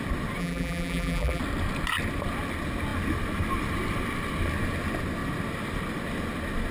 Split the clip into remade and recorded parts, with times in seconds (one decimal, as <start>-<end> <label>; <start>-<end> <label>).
0.0-0.4 recorded; 0.4-1.4 remade; 1.4-6.7 recorded